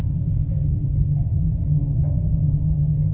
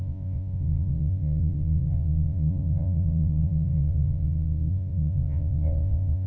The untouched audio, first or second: first